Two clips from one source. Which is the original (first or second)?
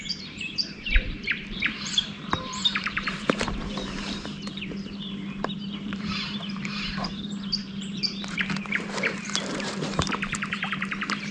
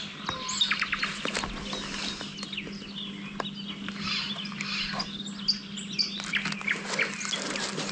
second